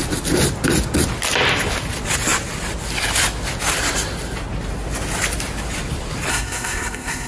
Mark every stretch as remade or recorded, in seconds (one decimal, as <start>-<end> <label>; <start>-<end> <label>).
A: 0.0-6.3 recorded; 6.3-7.3 remade